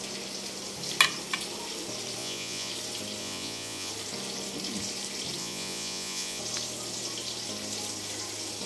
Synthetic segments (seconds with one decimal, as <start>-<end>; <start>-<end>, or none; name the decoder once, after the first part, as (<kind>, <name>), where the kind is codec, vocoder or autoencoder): 2.2-2.7 (vocoder, Vocos); 3.2-3.9; 5.4-6.4